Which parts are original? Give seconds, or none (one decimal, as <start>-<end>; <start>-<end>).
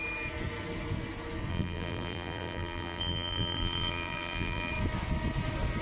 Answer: 0.0-1.5; 4.7-5.8